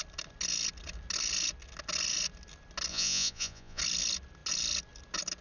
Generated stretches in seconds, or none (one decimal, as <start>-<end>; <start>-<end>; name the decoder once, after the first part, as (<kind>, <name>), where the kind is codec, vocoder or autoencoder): 2.9-3.8 (vocoder, Vocos)